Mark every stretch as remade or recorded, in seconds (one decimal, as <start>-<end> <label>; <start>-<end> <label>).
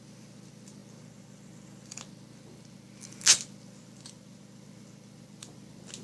0.0-6.0 recorded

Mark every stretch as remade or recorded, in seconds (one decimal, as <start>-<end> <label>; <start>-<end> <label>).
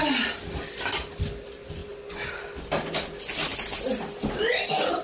0.0-5.0 recorded